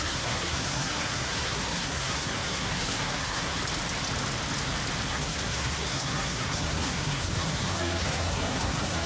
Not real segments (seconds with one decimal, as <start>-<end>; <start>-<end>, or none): 0.0-3.6; 5.1-9.1